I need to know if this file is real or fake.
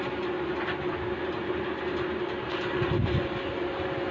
real